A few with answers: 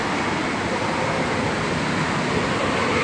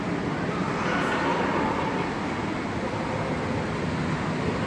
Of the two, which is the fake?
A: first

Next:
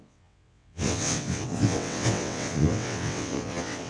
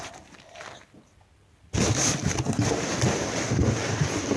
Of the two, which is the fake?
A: first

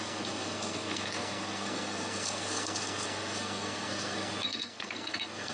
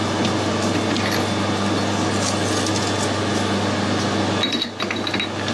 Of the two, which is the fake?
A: first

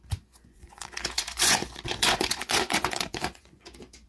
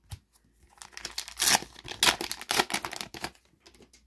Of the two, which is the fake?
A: first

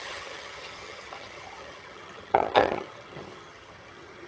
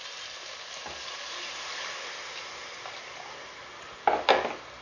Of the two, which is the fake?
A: first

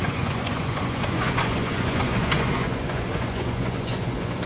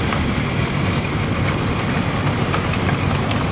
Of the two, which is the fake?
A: first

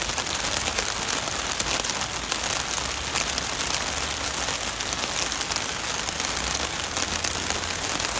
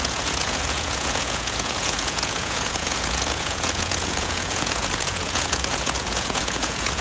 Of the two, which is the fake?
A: second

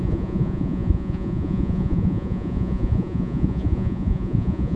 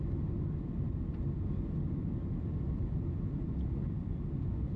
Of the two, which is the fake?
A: first